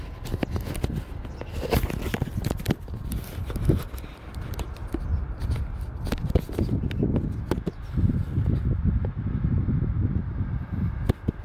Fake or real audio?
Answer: real